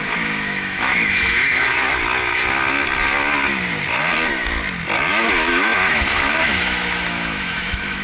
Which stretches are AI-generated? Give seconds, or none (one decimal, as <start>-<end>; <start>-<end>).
0.0-1.7; 5.1-8.0